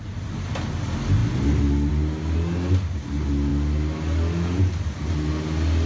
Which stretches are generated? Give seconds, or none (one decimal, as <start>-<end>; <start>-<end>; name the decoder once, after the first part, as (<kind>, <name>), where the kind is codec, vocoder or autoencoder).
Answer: none